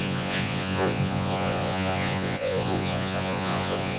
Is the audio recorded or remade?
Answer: remade